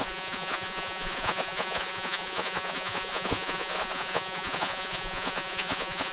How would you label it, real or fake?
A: fake